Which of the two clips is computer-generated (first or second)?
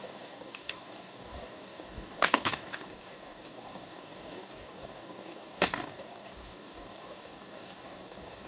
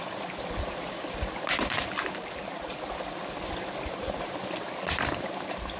first